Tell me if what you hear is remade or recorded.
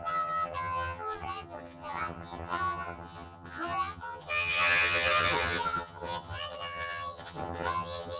remade